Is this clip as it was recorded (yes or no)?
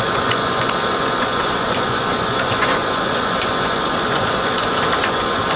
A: no